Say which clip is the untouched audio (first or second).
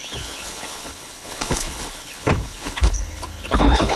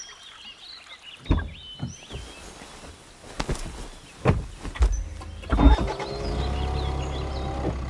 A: second